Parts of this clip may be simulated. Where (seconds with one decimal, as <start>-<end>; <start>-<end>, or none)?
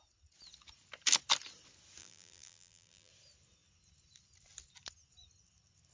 2.0-3.1